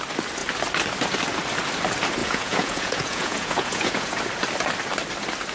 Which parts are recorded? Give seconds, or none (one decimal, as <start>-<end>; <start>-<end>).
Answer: 0.0-2.2; 4.2-5.5